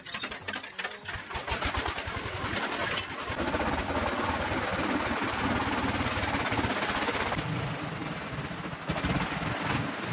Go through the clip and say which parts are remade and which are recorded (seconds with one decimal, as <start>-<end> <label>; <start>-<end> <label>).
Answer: 0.0-10.1 recorded